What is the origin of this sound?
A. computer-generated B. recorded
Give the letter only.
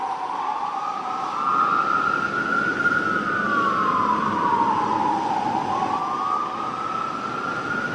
B